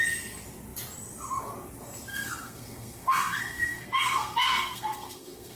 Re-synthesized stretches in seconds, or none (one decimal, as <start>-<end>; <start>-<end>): 2.1-5.6